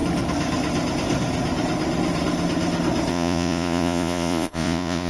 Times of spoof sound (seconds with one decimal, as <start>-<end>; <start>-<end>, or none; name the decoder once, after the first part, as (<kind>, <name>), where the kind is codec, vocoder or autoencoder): 3.1-5.1 (vocoder, Vocos)